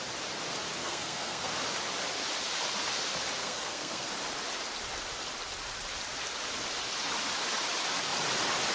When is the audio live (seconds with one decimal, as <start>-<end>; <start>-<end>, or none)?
0.0-0.8; 1.5-3.4; 4.1-8.7